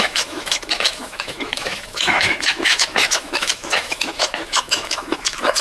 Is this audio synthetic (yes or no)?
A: yes